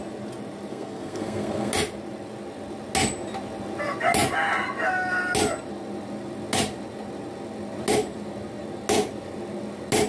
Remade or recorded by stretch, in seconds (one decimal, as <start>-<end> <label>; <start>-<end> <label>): 0.0-0.7 recorded; 0.7-1.7 remade; 1.7-10.1 recorded